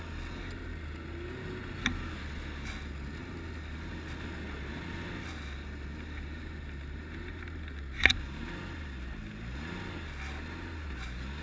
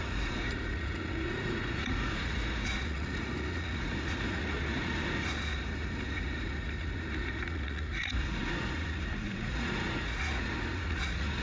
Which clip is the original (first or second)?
first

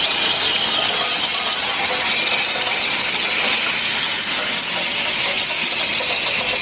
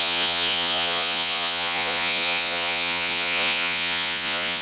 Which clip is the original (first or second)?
first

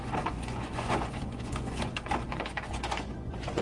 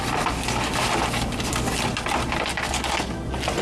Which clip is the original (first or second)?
second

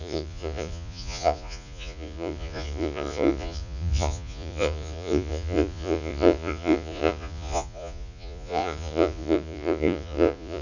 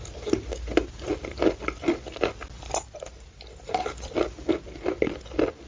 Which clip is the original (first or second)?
second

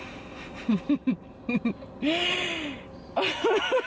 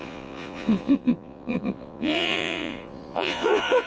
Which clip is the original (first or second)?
first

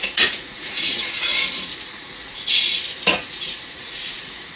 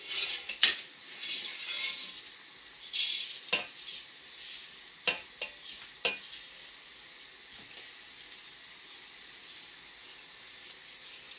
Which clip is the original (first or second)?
second